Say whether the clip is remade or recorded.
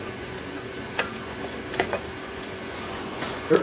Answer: remade